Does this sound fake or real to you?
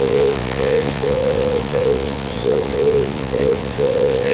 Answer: fake